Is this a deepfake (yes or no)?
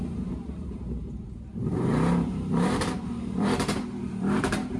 yes